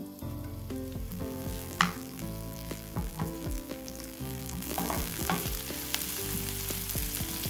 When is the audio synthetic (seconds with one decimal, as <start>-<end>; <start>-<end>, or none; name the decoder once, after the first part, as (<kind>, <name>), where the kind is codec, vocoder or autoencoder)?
1.1-5.4 (vocoder, BigVGAN v2)